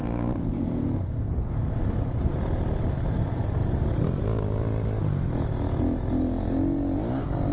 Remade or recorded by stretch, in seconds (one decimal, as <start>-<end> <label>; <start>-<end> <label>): 0.0-1.3 remade; 1.3-7.5 recorded